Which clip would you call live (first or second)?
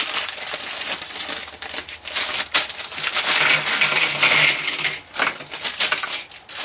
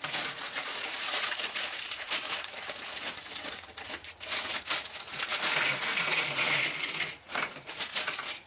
first